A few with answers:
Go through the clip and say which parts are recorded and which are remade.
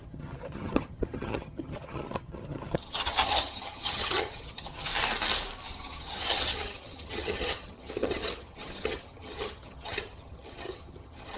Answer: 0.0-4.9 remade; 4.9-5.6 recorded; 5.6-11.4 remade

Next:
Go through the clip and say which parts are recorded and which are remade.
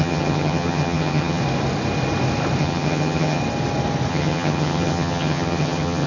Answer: 0.0-1.4 remade; 1.4-2.6 recorded; 2.6-3.4 remade; 3.4-4.1 recorded; 4.1-6.1 remade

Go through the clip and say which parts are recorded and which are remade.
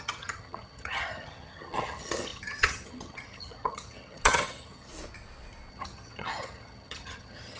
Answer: 0.0-4.9 remade; 4.9-5.7 recorded; 5.7-7.6 remade